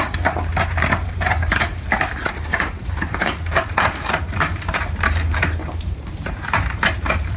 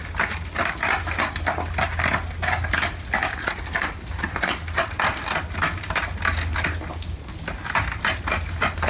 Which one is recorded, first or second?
second